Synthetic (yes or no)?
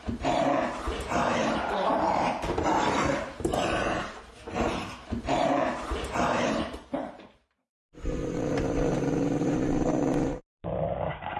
yes